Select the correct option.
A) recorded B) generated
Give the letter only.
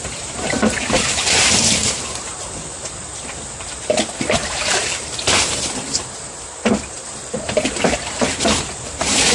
B